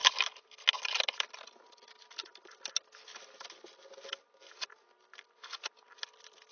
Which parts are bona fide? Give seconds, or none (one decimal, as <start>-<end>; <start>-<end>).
0.0-6.5